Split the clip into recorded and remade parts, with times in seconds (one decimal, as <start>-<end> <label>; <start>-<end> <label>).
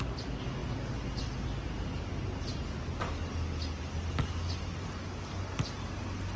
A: 0.0-6.4 recorded